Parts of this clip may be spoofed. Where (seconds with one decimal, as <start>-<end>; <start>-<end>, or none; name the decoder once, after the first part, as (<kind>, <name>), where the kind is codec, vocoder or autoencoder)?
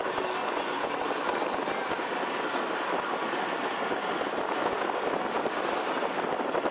0.4-0.9 (vocoder, Vocos)